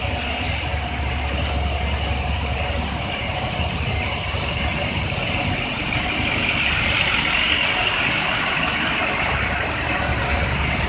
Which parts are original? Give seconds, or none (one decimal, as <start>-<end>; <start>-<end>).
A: 0.7-3.0